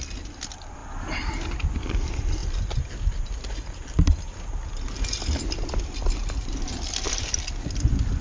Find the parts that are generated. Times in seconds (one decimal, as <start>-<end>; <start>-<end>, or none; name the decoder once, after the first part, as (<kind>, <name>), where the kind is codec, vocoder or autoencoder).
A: 0.8-1.3 (vocoder, BigVGAN v2)